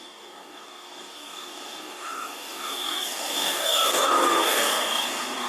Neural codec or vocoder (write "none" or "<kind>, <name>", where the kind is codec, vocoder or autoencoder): codec, DAC